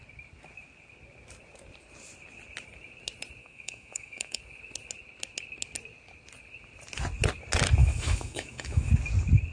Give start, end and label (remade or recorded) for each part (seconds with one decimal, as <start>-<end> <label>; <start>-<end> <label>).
0.0-3.4 recorded; 3.4-4.4 remade; 4.4-7.8 recorded; 7.8-8.9 remade; 8.9-9.5 recorded